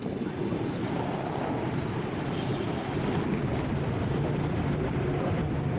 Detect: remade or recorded recorded